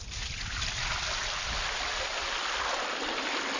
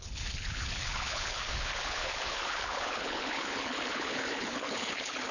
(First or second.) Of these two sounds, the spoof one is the second